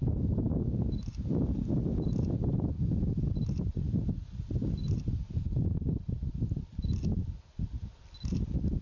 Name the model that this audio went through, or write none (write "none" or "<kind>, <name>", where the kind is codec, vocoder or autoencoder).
none